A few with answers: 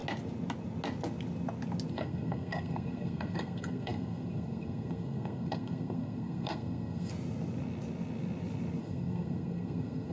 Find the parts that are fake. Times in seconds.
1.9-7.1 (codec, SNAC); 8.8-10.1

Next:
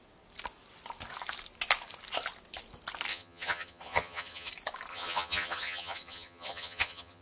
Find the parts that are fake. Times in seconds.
3.1-4.5 (vocoder, HiFi-GAN); 4.9-7.2